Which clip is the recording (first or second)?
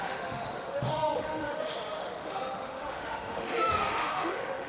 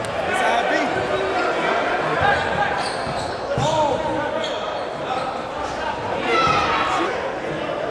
second